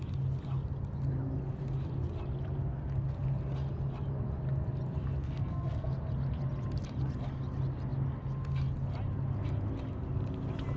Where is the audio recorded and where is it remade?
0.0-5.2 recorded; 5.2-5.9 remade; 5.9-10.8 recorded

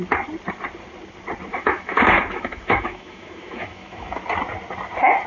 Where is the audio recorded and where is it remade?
0.0-1.5 recorded; 1.5-4.2 remade; 4.2-5.3 recorded

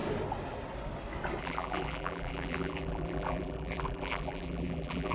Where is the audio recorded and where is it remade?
0.0-1.4 recorded; 1.4-5.1 remade

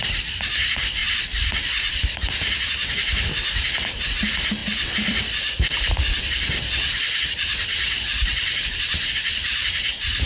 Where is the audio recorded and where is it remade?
0.0-1.0 recorded; 1.0-2.5 remade; 2.5-4.6 recorded; 4.6-9.1 remade; 9.1-10.3 recorded

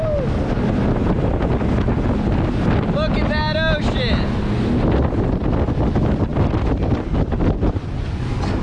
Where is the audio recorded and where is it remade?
0.0-6.3 recorded; 6.3-8.2 remade; 8.2-8.6 recorded

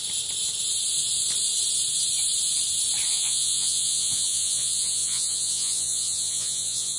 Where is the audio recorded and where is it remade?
0.0-3.1 recorded; 3.1-7.0 remade

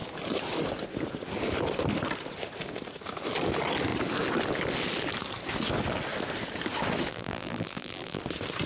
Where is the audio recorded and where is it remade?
0.0-7.1 recorded; 7.1-8.2 remade; 8.2-8.7 recorded

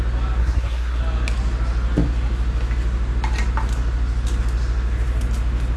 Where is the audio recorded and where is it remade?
0.0-0.4 recorded; 0.4-1.0 remade; 1.0-5.8 recorded